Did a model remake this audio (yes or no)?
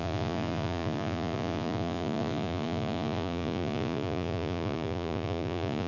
yes